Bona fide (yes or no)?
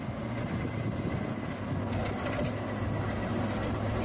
yes